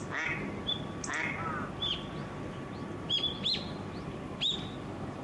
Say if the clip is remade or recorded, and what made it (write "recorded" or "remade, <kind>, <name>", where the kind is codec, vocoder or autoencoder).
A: recorded